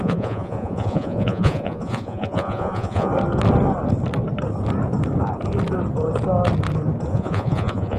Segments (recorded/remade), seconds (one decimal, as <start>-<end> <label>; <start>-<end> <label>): 0.0-3.1 remade; 3.1-7.1 recorded; 7.1-8.0 remade